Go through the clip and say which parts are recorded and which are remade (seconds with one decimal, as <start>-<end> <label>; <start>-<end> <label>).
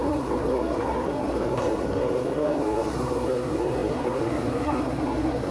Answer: 0.0-5.5 remade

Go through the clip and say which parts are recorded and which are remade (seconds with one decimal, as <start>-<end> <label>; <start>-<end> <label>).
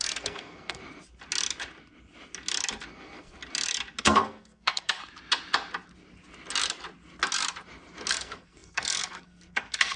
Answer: 0.0-0.8 remade; 0.8-2.9 recorded; 2.9-3.4 remade; 3.4-4.0 recorded; 4.0-5.0 remade; 5.0-8.1 recorded; 8.1-10.0 remade